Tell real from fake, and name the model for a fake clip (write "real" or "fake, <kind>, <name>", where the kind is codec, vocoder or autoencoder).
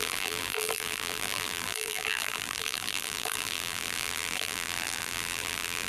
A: fake, vocoder, BigVGAN v2